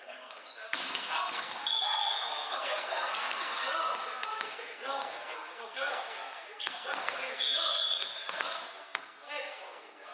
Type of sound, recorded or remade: remade